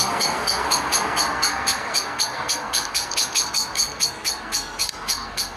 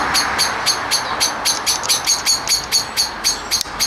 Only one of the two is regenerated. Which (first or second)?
first